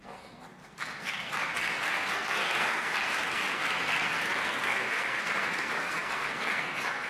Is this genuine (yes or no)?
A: no